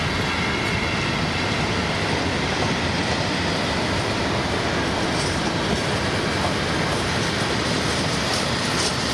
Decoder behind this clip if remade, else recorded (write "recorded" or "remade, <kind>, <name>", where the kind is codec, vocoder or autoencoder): recorded